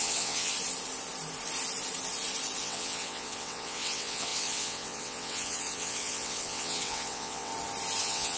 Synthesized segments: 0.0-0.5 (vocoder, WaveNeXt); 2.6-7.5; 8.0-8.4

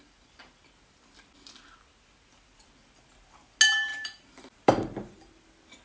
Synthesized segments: 3.9-5.3 (vocoder, BigVGAN v2)

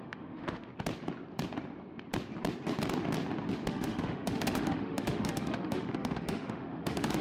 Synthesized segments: 0.0-0.7 (autoencoder, DAC-VAE); 3.7-7.2

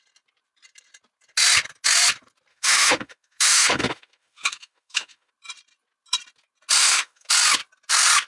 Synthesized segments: 2.5-5.3 (autoencoder, DAC-VAE); 6.8-7.3

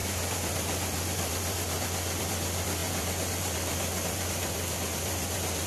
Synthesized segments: 0.0-5.7 (vocoder, BigVGAN v2)